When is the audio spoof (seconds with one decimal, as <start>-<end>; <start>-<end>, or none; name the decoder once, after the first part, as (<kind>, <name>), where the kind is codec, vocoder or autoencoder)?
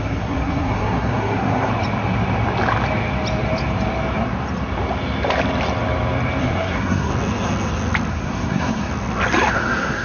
0.0-1.7 (codec, SNAC); 6.4-7.1; 8.1-8.9; 9.5-10.0